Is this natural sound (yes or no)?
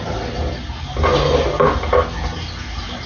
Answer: yes